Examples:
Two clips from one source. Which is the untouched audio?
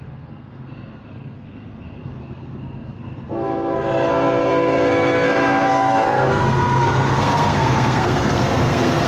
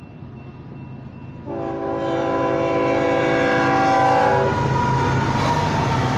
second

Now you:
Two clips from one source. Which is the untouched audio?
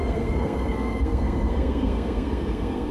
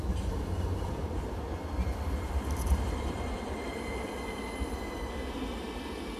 second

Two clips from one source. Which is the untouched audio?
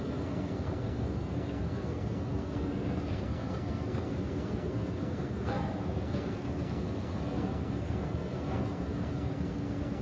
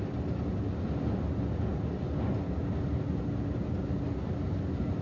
second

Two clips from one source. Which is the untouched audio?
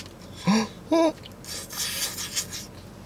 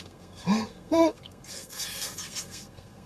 first